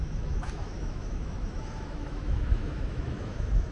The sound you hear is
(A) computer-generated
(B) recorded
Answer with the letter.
A